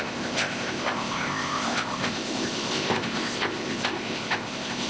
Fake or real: fake